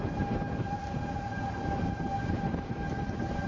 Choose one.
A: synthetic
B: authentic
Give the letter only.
A